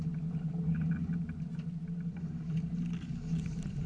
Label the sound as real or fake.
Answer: real